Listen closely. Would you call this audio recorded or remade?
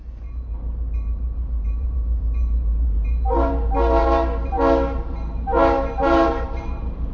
remade